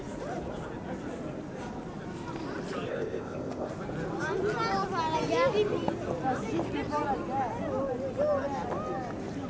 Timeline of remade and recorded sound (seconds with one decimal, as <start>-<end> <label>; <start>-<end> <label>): 0.0-2.9 recorded; 2.9-3.7 remade; 3.7-9.5 recorded